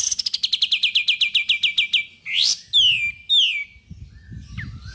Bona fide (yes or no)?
yes